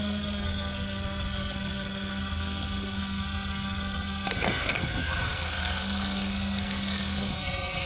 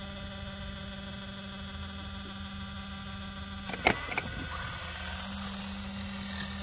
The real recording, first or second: second